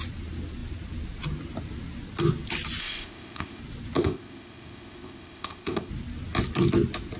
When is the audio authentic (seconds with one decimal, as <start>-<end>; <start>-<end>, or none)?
0.0-2.8; 3.6-4.0; 5.9-7.2